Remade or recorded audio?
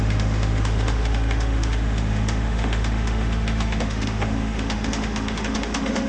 remade